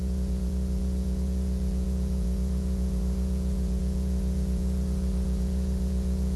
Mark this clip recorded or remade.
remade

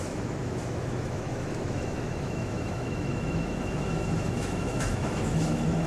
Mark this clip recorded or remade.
remade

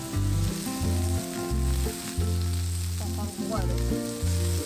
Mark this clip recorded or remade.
recorded